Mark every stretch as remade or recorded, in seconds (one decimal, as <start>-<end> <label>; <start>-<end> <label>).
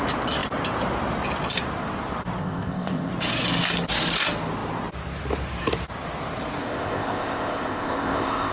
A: 0.0-2.4 recorded; 2.4-3.1 remade; 3.1-6.6 recorded; 6.6-8.5 remade